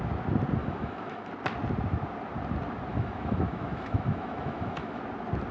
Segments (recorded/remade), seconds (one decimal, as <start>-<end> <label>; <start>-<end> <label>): 0.0-0.6 recorded; 0.6-1.3 remade; 1.3-2.9 recorded; 2.9-5.0 remade; 5.0-5.5 recorded